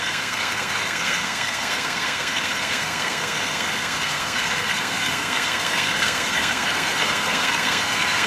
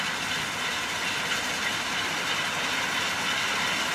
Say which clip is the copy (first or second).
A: first